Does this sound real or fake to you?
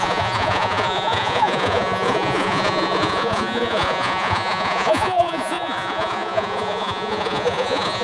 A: fake